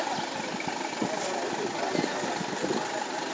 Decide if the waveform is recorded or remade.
recorded